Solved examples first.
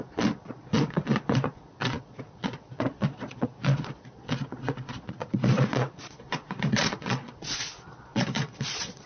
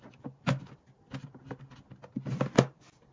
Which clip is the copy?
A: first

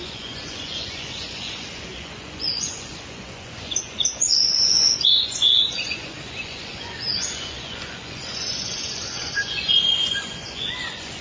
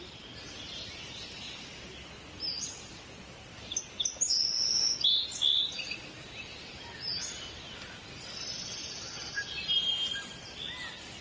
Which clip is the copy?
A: first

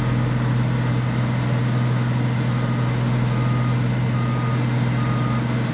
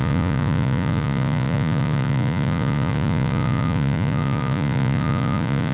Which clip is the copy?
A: second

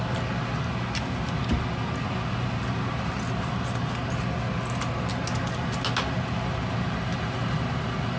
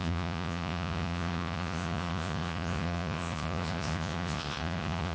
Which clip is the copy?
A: second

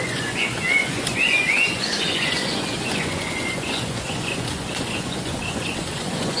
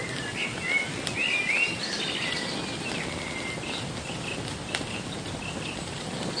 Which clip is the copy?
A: first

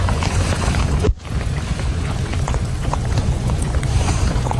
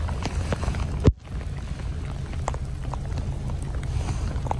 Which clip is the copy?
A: first